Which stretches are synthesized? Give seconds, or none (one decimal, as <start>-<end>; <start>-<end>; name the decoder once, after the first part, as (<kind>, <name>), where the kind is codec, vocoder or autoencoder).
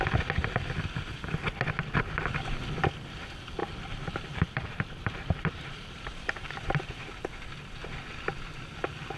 3.6-6.5 (vocoder, BigVGAN v2)